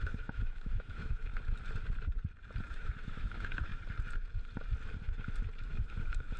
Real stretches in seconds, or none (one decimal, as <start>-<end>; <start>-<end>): 1.3-2.7; 3.7-5.7